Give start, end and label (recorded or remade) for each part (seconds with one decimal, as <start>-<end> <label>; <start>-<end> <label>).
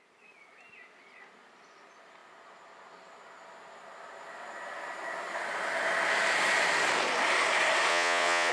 0.0-7.9 recorded; 7.9-8.5 remade